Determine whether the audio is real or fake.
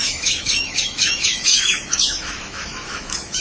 fake